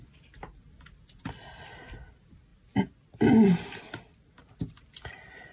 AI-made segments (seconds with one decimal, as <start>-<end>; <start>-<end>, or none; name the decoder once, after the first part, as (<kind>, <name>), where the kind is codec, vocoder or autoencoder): none